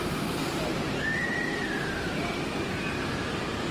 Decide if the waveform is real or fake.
fake